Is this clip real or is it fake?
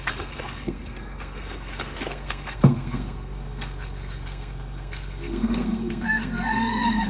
fake